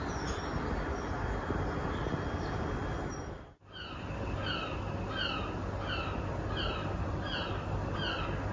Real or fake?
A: real